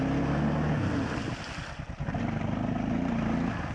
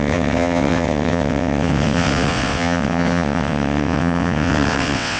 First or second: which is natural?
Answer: first